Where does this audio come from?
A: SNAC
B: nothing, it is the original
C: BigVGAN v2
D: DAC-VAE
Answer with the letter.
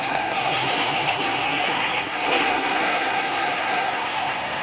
A